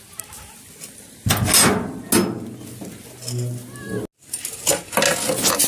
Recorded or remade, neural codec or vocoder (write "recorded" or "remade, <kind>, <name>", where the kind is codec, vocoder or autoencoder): recorded